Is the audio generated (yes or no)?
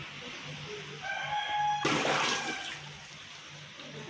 no